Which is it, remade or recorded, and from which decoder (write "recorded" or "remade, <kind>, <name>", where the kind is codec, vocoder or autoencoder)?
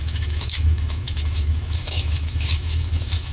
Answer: remade, autoencoder, DAC-VAE